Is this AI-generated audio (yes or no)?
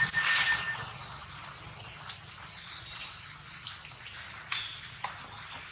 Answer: no